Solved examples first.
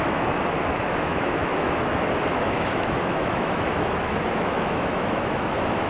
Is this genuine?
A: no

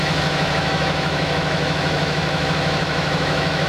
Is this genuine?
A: no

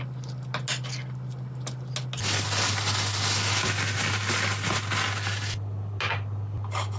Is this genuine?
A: yes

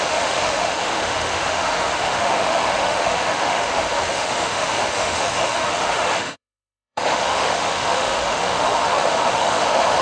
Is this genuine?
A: no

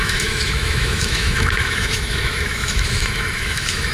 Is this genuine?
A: no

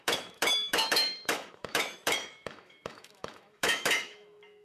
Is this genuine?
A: no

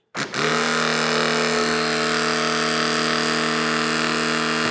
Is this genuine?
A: yes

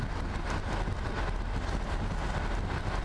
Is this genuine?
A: yes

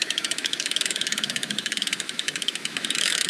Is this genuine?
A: no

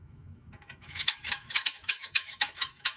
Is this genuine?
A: no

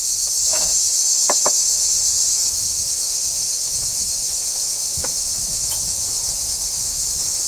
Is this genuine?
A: no